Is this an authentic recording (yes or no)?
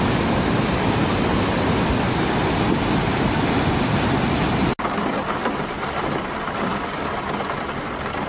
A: yes